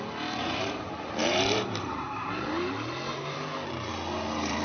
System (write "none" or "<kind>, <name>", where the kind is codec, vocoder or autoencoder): vocoder, BigVGAN v2